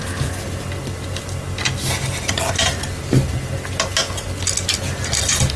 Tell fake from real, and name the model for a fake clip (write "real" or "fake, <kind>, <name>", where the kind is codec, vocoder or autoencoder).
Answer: real